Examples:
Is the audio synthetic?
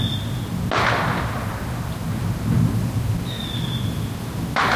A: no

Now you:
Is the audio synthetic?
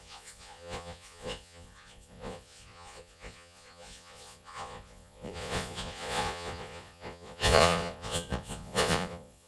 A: yes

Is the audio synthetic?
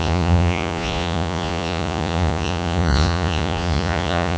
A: yes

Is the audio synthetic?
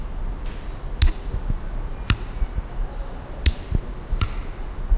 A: no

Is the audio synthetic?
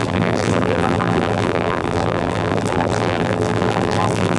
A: yes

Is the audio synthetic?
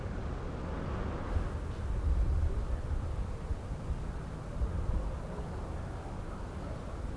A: no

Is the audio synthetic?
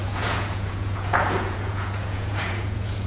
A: yes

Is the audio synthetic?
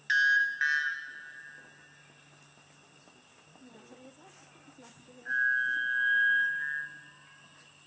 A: no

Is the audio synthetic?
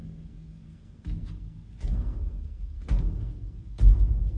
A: yes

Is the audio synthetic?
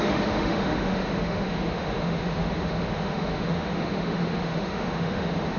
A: yes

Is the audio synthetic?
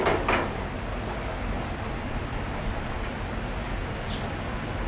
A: no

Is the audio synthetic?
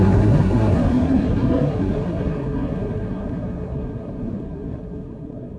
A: yes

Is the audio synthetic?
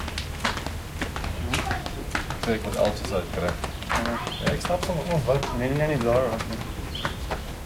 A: no